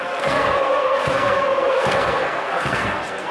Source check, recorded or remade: remade